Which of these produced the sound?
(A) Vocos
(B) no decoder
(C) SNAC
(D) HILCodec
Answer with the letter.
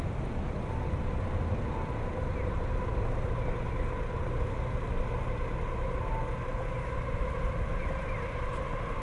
B